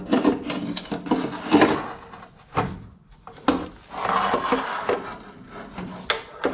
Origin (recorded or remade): recorded